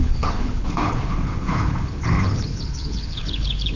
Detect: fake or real fake